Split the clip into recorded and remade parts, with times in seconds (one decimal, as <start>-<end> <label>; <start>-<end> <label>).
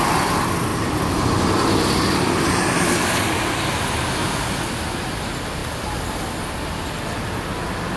0.0-8.0 recorded